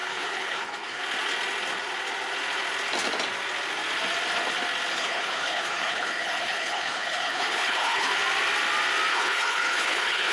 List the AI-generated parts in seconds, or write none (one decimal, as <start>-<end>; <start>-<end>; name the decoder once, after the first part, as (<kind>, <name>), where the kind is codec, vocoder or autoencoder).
0.0-1.0 (codec, HILCodec); 4.9-8.1; 9.1-10.3